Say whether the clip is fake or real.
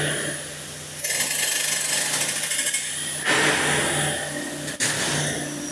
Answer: real